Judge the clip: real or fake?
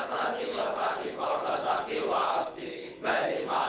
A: fake